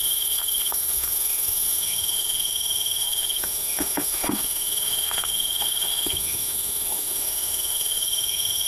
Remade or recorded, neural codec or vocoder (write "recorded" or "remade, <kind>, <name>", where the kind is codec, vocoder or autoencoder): remade, autoencoder, DAC-VAE